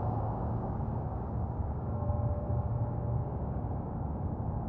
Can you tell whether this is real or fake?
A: fake